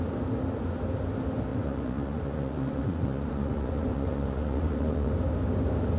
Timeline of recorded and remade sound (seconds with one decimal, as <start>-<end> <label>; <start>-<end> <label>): 0.0-1.5 recorded; 1.5-5.1 remade; 5.1-6.0 recorded